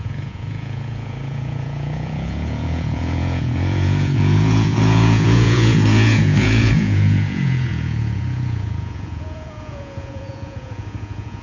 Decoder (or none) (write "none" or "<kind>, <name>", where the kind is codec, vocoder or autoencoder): vocoder, Vocos